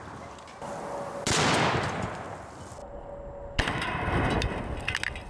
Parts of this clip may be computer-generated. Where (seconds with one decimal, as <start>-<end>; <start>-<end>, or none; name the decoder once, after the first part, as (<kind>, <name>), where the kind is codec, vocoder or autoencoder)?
none

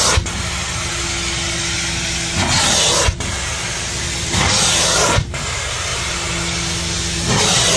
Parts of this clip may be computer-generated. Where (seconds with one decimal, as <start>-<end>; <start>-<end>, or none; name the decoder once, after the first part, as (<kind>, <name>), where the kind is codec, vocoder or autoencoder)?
none

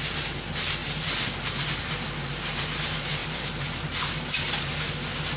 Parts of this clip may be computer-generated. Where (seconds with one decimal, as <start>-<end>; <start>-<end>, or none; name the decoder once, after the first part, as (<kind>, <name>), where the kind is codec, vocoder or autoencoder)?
0.8-2.1 (vocoder, BigVGAN v2); 3.2-4.2

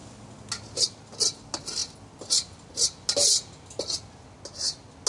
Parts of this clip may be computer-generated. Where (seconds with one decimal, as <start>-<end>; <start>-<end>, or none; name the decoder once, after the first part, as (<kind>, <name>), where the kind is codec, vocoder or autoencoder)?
none